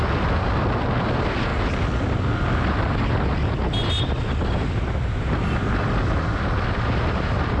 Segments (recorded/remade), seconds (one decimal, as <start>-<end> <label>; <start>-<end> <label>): 0.0-7.6 recorded